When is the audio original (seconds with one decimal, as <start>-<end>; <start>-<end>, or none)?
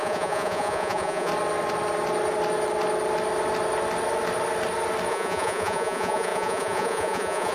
1.3-5.1